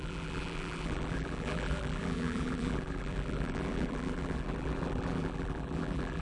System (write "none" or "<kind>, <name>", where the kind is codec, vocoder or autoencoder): vocoder, BigVGAN v2